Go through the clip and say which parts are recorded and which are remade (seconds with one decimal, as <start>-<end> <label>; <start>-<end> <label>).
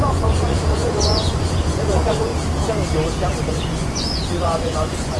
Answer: 0.0-2.3 remade; 2.3-3.5 recorded; 3.5-5.2 remade